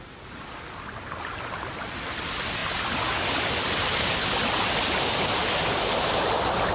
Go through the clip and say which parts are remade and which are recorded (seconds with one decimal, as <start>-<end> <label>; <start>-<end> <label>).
0.0-6.7 recorded